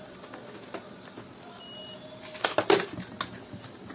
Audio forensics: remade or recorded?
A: recorded